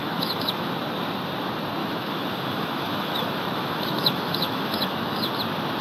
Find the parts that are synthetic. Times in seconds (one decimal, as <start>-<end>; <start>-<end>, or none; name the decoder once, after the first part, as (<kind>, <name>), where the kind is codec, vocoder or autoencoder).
0.0-0.8 (autoencoder, DAC-VAE); 1.8-5.3